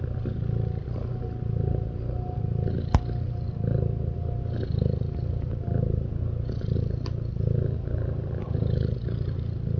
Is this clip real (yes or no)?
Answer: yes